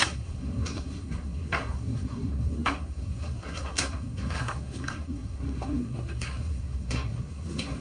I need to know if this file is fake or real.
fake